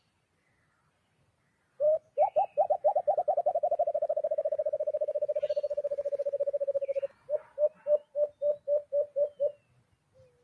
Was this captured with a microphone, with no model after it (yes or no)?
yes